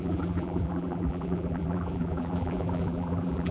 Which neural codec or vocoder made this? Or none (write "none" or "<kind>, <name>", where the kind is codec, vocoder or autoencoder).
vocoder, BigVGAN v2